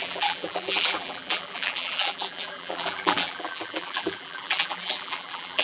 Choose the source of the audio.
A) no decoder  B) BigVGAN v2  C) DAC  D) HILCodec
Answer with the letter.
B